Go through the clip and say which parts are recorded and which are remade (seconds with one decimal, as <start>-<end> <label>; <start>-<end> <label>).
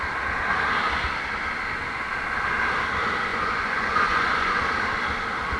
0.0-3.3 recorded; 3.3-4.5 remade; 4.5-5.6 recorded